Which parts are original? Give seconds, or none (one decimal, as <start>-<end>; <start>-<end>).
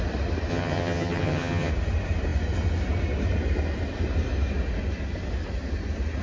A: 0.0-0.5; 1.7-6.2